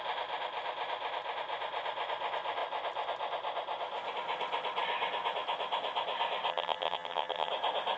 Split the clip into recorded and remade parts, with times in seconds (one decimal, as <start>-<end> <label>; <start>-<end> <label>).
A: 0.0-6.5 recorded; 6.5-7.5 remade; 7.5-8.0 recorded